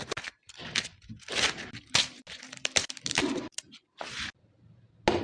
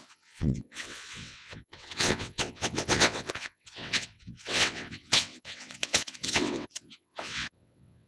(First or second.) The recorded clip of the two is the first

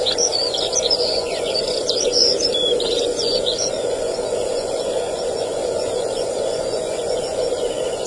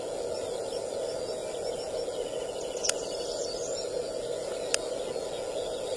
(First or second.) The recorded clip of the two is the second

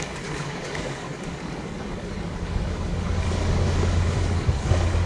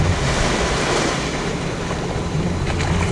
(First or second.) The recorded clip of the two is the second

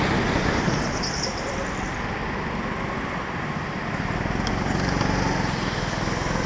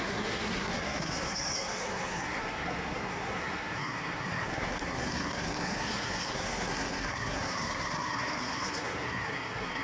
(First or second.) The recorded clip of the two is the first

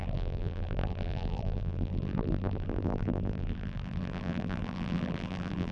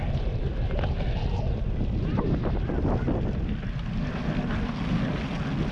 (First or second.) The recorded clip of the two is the second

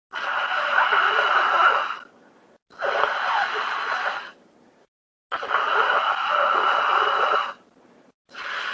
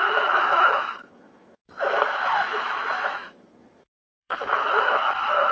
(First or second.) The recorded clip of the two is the first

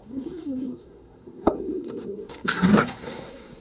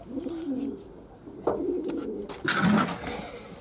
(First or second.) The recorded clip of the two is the second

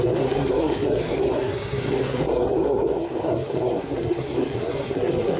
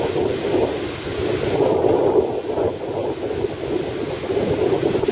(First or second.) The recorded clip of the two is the second